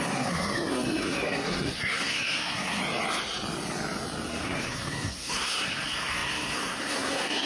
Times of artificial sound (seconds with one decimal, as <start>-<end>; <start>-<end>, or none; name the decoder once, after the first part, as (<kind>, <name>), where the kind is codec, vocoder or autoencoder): 0.0-2.8 (codec, SNAC); 4.3-7.5